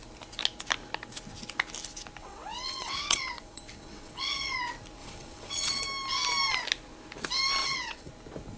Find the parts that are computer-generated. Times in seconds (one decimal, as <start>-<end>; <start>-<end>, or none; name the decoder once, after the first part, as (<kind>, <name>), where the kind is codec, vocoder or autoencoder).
2.2-4.5 (vocoder, WaveNeXt); 5.0-5.8; 7.6-8.1

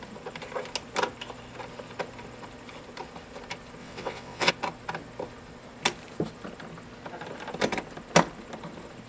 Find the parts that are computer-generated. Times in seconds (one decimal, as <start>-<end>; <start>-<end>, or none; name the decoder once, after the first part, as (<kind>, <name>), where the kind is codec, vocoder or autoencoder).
3.8-4.5 (vocoder, WaveNeXt)